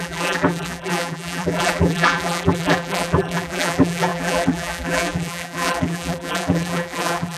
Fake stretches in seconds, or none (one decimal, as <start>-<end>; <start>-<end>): 0.0-7.4